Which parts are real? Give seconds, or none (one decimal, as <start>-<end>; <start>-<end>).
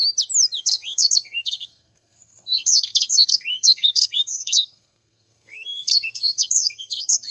0.0-0.6